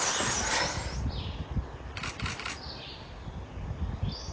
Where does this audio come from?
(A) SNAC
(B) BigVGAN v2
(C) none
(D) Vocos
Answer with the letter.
C